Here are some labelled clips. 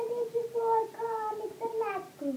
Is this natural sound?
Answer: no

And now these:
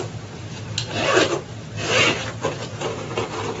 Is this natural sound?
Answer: no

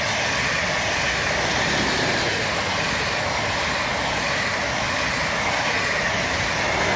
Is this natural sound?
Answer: yes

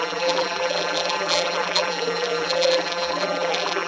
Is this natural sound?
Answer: no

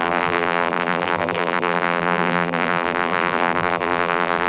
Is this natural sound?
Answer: no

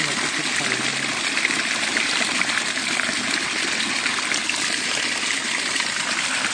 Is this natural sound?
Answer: yes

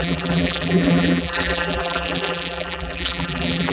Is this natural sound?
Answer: no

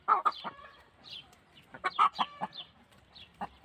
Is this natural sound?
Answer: no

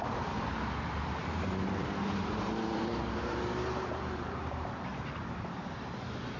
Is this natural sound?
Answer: no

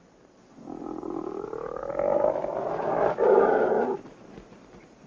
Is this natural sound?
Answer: yes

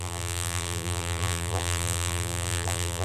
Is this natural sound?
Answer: no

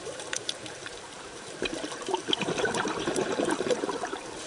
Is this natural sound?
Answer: no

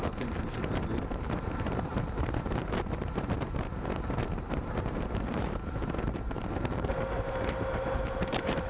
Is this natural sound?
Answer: no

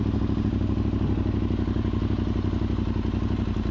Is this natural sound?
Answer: yes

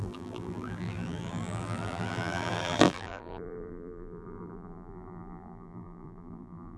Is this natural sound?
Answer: no